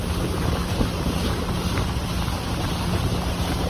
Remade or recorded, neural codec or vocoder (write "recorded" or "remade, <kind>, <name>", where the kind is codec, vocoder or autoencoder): recorded